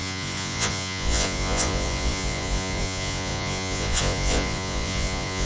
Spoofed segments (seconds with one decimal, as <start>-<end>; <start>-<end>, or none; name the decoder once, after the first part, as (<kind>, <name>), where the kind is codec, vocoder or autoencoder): 0.0-5.5 (vocoder, Vocos)